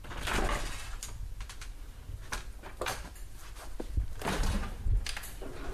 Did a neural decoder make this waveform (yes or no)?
no